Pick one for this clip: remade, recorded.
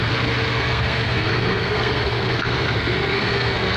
remade